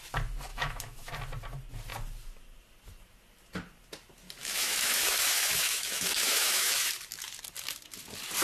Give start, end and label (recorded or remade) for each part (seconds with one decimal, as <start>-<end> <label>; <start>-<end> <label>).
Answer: 0.0-0.5 recorded; 0.5-1.1 remade; 1.1-4.4 recorded; 4.4-6.9 remade; 6.9-8.4 recorded